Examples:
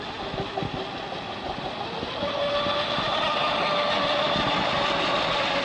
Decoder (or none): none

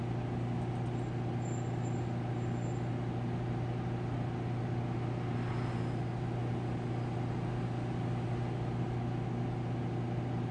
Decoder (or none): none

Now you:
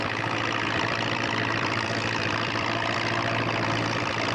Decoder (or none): vocoder, BigVGAN v2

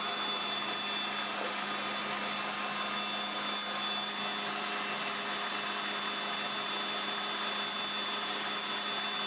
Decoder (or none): none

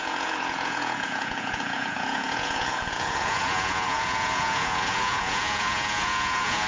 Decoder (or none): vocoder, Vocos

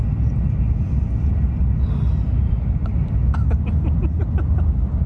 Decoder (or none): none